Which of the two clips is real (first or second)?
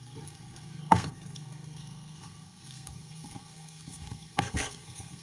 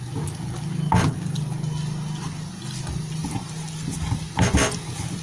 second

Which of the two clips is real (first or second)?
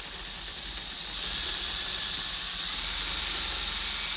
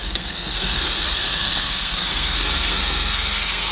first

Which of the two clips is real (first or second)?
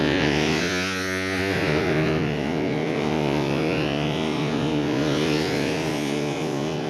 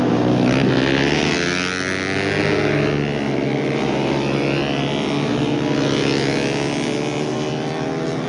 second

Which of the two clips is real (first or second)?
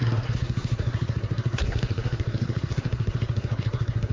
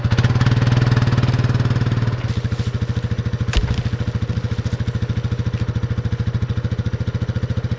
second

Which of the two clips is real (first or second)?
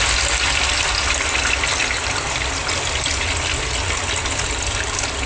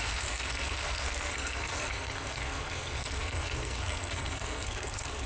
first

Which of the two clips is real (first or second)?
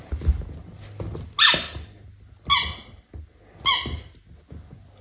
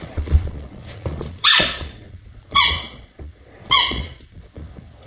first